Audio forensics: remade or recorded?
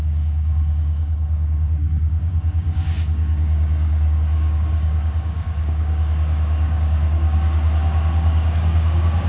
remade